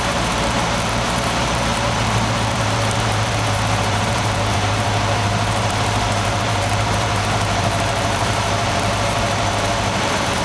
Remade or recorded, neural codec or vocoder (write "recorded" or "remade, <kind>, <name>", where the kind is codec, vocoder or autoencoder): remade, vocoder, BigVGAN v2